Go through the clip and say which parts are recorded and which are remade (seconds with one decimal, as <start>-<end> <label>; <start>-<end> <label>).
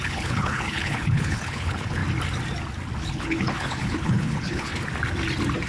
0.0-2.0 remade; 2.0-3.0 recorded; 3.0-4.7 remade; 4.7-5.7 recorded